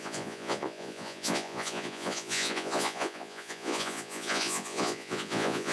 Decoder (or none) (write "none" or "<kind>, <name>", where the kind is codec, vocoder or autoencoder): vocoder, Vocos